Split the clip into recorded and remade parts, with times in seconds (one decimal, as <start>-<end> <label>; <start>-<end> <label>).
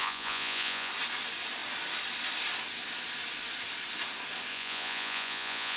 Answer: 0.0-0.9 remade; 0.9-4.5 recorded; 4.5-5.8 remade